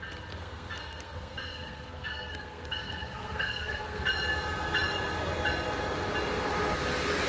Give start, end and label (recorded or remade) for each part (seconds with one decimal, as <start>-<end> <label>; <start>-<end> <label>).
0.0-0.4 recorded; 0.4-4.0 remade; 4.0-7.3 recorded